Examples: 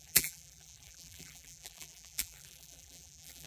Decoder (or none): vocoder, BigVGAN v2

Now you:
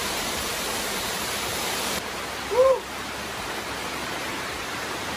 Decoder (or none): vocoder, BigVGAN v2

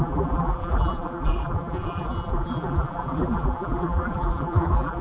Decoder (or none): vocoder, BigVGAN v2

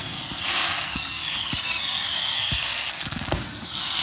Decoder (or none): codec, SNAC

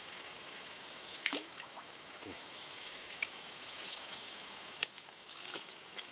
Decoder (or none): autoencoder, DAC-VAE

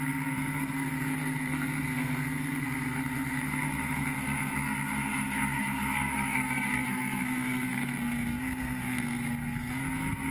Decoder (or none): codec, SNAC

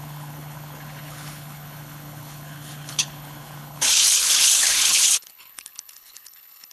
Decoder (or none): codec, HILCodec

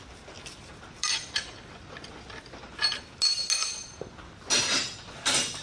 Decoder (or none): none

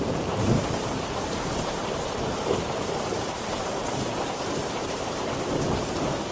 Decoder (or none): vocoder, BigVGAN v2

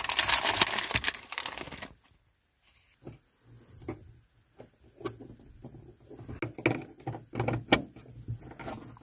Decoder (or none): none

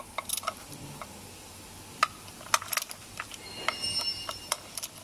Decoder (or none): none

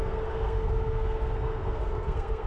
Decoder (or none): codec, SNAC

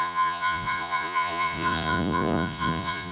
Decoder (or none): vocoder, Vocos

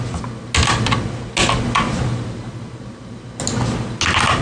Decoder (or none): none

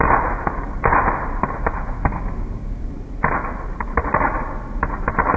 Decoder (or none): none